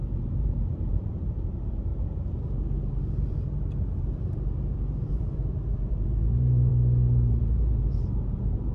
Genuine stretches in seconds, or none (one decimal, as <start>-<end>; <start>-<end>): 1.9-2.9; 6.7-7.3